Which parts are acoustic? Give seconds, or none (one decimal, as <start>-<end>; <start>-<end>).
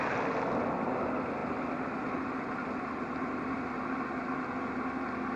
0.0-5.4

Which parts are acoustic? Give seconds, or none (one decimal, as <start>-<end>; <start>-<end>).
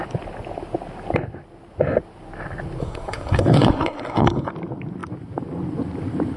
0.0-2.8; 4.5-6.4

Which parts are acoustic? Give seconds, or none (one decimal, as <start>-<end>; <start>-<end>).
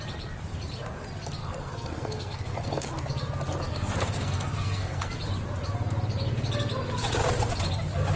0.0-1.4; 2.9-3.7; 5.1-8.2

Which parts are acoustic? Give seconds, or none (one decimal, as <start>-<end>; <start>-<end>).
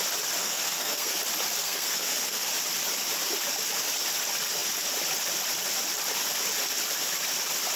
0.0-0.4; 1.2-1.6; 2.5-7.8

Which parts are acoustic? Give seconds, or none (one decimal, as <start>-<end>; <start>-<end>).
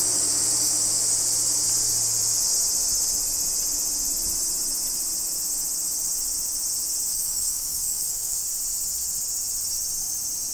0.0-7.1; 8.4-10.5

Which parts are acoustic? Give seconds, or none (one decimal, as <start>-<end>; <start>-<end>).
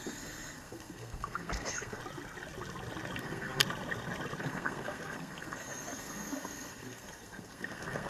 2.0-3.2; 3.6-4.4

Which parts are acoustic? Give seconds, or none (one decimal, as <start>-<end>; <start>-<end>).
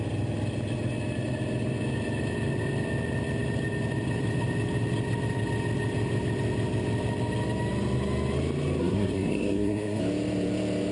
0.0-8.8; 10.0-10.9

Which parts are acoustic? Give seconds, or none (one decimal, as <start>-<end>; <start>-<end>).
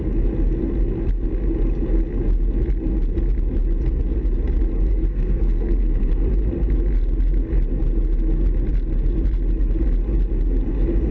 0.0-4.8; 6.3-11.1